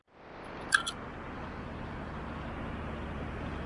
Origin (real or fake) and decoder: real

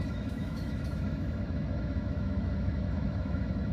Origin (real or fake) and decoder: fake, autoencoder, DAC-VAE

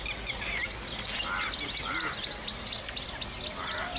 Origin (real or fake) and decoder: real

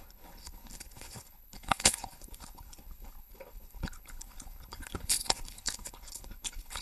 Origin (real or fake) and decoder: fake, codec, HILCodec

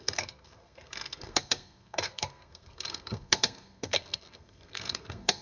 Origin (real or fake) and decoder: fake, codec, SNAC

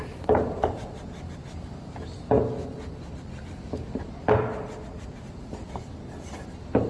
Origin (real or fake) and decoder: real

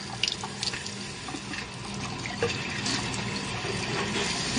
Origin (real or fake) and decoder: real